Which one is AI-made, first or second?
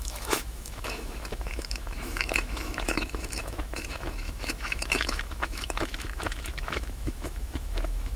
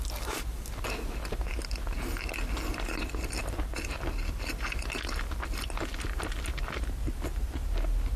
first